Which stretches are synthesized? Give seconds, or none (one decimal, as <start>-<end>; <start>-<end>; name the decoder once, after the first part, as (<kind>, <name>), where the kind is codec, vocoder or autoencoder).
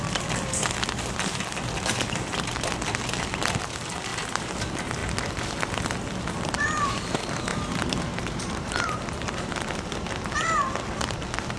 4.1-4.6 (vocoder, BigVGAN v2); 7.5-9.6